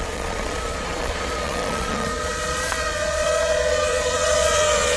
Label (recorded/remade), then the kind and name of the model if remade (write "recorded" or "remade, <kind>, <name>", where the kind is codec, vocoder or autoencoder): remade, vocoder, Vocos